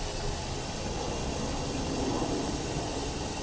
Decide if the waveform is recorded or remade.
recorded